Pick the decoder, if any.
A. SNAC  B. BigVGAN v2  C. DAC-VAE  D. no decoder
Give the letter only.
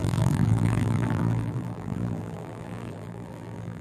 B